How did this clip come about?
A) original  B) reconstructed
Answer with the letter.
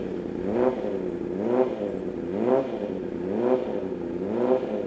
A